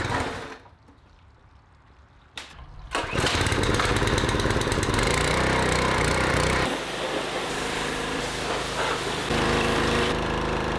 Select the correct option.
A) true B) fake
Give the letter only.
B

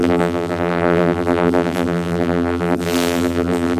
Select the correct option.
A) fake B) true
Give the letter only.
A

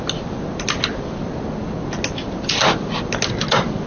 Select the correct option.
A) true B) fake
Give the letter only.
A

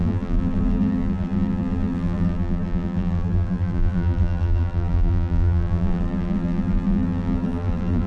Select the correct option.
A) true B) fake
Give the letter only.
B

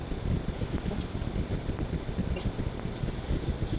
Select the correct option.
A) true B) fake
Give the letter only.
A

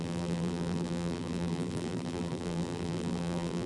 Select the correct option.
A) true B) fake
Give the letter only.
B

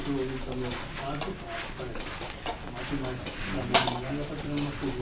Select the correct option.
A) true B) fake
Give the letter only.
A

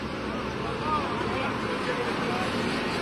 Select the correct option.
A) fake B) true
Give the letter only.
B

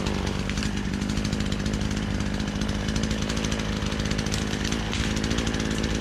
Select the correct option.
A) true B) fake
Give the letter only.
A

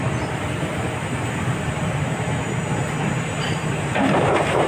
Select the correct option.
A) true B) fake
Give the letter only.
B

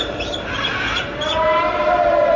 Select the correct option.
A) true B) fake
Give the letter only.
B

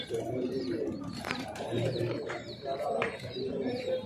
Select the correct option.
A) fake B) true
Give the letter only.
A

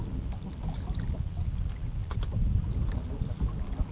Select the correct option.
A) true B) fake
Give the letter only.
A